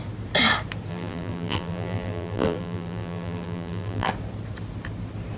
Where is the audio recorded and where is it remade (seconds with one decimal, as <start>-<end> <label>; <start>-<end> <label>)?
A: 0.0-0.9 recorded; 0.9-4.1 remade; 4.1-5.4 recorded